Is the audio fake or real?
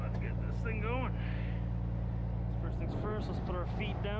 real